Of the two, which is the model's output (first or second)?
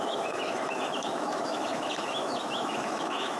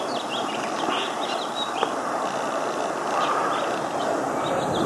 first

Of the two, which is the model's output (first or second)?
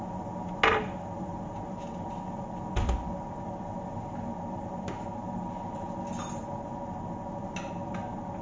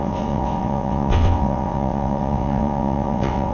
second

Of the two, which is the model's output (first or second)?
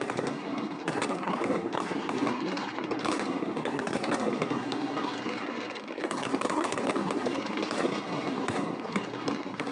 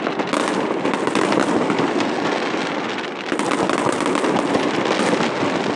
first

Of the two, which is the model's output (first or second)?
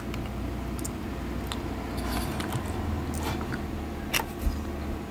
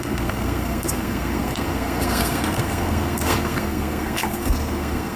second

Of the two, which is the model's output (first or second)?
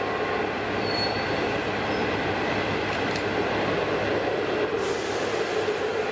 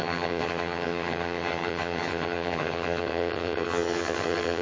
second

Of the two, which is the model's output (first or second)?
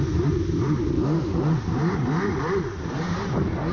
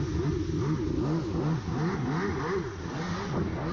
first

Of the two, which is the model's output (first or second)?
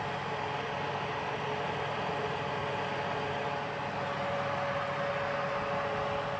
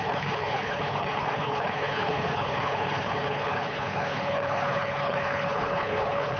second